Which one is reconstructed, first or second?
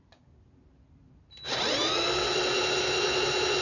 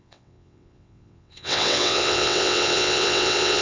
second